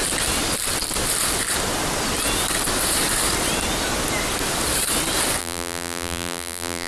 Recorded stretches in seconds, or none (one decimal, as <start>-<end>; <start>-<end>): 0.0-5.4